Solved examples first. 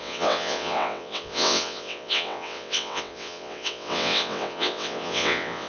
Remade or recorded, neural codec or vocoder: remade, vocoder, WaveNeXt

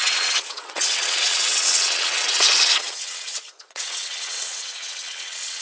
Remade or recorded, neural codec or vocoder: remade, vocoder, WaveNeXt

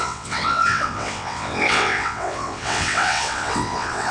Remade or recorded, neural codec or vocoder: remade, vocoder, WaveNeXt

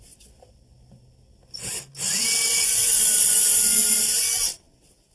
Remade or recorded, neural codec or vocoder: recorded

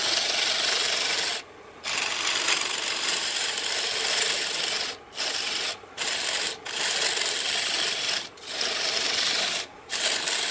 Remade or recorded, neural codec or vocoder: recorded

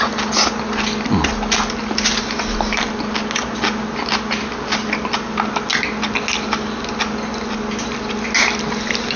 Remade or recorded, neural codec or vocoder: recorded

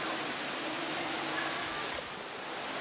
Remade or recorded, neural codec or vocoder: recorded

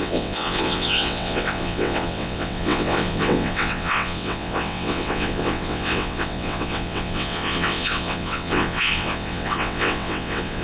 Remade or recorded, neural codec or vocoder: remade, vocoder, WaveNeXt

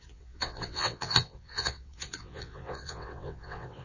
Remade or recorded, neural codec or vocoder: remade, vocoder, WaveNeXt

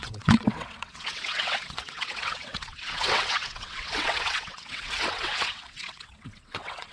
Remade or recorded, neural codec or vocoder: remade, vocoder, WaveNeXt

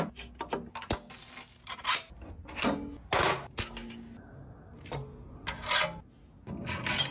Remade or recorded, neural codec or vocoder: recorded